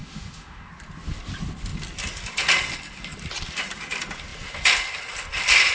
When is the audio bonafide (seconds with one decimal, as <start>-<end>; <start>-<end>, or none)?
0.7-5.7